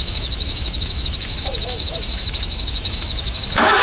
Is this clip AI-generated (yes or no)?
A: yes